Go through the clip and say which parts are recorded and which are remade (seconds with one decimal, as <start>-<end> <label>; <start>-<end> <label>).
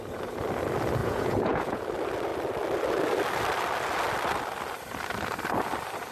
0.0-1.0 recorded; 1.0-1.8 remade; 1.8-6.1 recorded